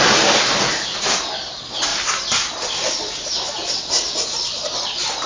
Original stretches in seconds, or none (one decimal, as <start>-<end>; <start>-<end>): 0.0-1.9